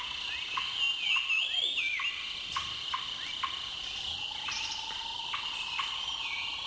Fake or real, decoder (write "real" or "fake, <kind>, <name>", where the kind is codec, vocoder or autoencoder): real